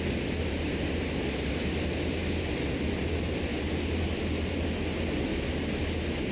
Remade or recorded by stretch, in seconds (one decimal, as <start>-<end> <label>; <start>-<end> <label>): 0.0-6.3 recorded